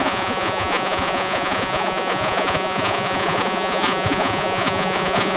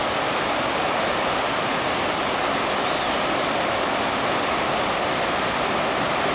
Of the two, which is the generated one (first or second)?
first